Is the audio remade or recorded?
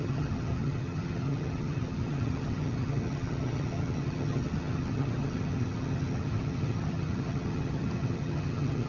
remade